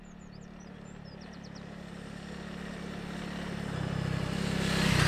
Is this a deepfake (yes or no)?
no